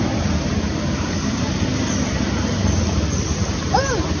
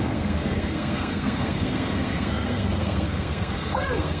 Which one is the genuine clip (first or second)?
first